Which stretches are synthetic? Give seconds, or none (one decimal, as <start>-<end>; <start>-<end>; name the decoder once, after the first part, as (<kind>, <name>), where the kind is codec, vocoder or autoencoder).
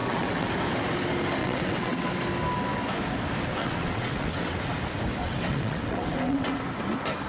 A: 0.0-0.5 (vocoder, WaveNeXt); 1.4-2.1; 3.5-4.6; 5.2-6.6